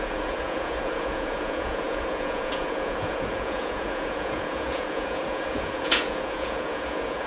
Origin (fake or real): fake